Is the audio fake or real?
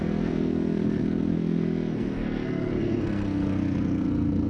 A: fake